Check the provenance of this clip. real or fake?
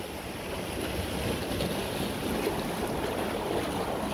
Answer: real